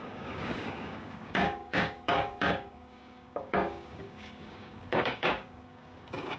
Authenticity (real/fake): fake